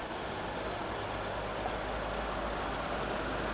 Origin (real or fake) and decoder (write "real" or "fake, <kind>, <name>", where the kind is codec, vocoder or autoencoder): real